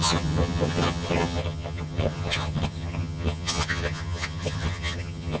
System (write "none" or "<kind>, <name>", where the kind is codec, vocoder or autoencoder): vocoder, HiFi-GAN